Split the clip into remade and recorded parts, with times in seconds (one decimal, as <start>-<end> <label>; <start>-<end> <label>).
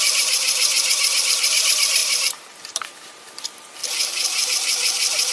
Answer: 0.0-0.7 remade; 0.7-1.2 recorded; 1.2-3.8 remade; 3.8-4.5 recorded; 4.5-5.3 remade